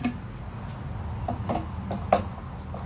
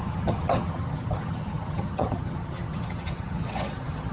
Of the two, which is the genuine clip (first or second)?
first